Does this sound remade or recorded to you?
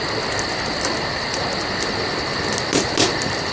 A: recorded